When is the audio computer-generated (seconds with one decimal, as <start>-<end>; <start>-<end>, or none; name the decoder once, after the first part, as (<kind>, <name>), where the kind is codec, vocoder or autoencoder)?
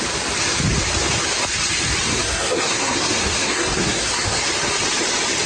2.1-4.4 (codec, SNAC)